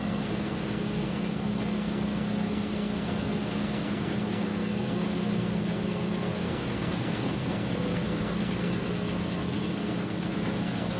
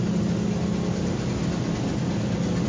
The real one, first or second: second